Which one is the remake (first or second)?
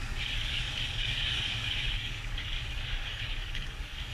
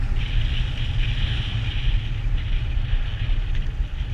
first